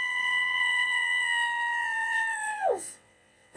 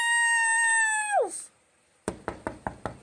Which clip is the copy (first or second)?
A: first